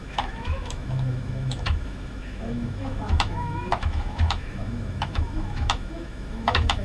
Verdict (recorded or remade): remade